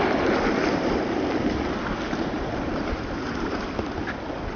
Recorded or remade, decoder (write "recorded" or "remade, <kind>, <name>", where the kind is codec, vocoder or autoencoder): recorded